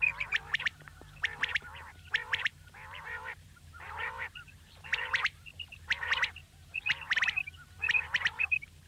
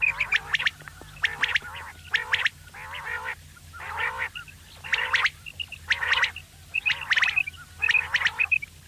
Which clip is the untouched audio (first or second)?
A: second